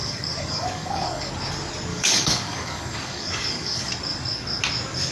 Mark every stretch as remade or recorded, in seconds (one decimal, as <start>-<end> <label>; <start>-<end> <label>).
0.0-1.3 remade; 1.3-1.9 recorded; 1.9-3.9 remade; 3.9-5.1 recorded